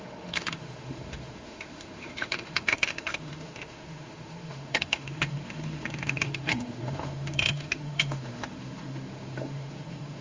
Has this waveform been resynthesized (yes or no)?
yes